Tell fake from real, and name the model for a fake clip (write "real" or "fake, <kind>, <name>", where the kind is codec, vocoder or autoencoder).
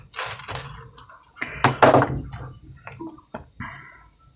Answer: real